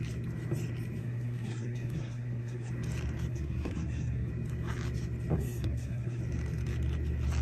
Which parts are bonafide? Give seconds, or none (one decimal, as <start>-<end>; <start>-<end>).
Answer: 0.0-1.0; 2.7-3.3; 4.3-5.3; 6.2-7.4

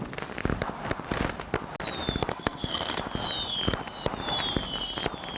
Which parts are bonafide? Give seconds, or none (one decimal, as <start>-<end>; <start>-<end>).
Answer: 0.0-2.3; 3.0-5.4

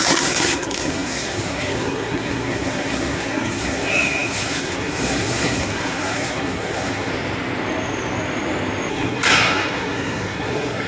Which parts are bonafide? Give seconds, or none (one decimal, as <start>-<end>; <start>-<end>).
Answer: 7.1-8.9

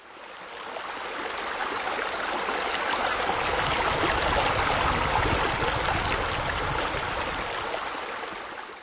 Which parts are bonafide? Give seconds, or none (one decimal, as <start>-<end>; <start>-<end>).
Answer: 0.0-8.8

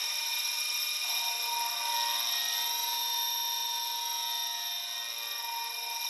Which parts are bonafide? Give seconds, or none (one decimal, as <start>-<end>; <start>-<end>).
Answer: 0.0-6.1

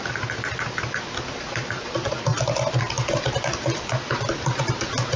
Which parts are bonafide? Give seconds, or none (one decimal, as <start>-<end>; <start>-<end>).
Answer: 0.0-5.2